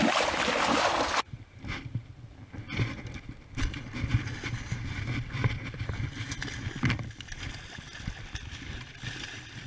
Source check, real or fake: real